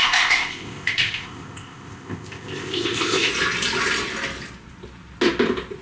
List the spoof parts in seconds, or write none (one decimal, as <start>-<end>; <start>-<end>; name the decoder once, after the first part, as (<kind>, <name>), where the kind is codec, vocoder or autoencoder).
0.0-3.3 (codec, ZipCodec)